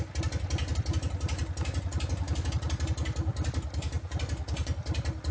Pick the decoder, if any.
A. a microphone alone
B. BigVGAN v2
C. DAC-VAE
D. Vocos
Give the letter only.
A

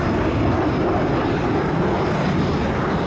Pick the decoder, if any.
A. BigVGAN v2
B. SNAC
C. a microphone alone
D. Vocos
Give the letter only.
C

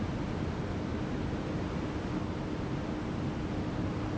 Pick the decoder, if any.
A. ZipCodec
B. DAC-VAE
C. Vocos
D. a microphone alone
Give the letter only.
D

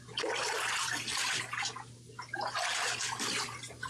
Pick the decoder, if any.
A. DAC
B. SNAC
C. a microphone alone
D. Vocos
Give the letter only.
C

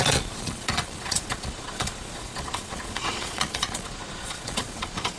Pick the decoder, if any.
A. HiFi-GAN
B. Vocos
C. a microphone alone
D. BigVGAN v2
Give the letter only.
B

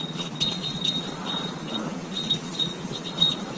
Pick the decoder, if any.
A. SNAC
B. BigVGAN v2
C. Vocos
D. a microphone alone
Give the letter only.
C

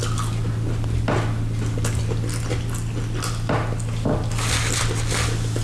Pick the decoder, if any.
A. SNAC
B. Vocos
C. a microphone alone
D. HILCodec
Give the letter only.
C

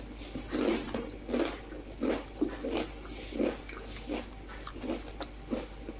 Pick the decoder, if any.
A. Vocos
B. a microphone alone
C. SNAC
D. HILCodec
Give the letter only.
B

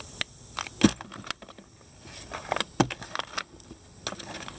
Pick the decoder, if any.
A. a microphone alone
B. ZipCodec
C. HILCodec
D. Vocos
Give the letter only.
A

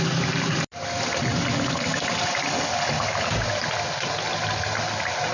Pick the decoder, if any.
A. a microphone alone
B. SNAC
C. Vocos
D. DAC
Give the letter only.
A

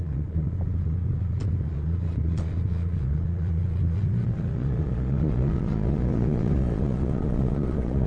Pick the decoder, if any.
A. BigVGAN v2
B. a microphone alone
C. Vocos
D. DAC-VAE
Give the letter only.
C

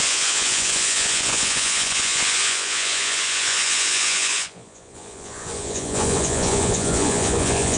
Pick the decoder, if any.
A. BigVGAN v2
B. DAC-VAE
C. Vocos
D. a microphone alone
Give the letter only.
C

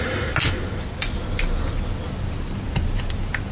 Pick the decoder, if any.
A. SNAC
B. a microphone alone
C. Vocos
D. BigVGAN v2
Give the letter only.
B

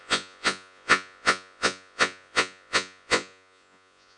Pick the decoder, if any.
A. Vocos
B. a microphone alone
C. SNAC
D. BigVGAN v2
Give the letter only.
A